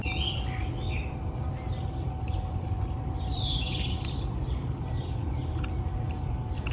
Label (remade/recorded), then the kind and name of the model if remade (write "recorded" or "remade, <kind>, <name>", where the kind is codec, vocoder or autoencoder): remade, vocoder, BigVGAN v2